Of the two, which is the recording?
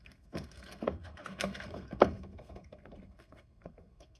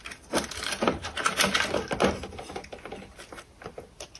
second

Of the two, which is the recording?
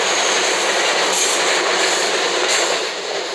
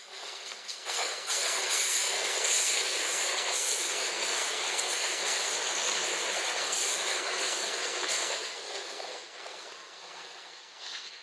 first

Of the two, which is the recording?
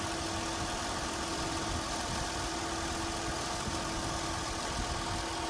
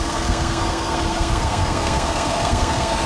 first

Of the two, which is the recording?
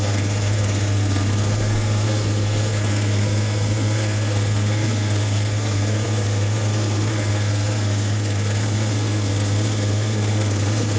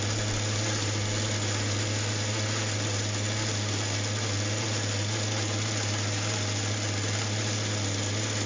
second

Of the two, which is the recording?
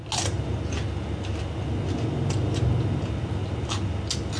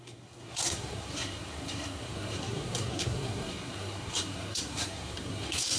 first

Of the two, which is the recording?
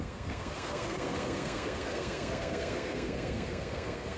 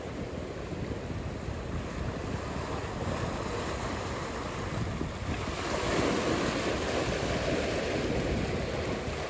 second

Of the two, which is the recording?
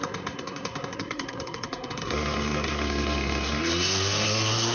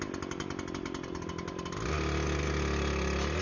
second